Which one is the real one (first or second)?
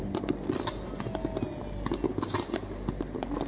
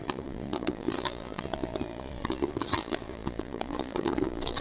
first